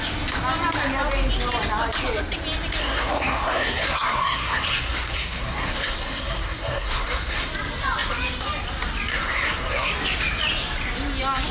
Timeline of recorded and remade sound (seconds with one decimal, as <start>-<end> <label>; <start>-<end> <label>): 0.0-2.8 recorded; 2.8-7.5 remade; 7.5-9.1 recorded; 9.1-9.9 remade; 9.9-11.5 recorded